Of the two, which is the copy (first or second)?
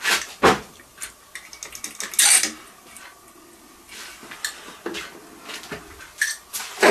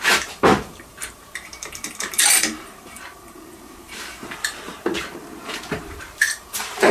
second